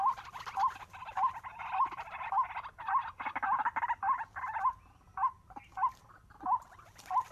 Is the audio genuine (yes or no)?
yes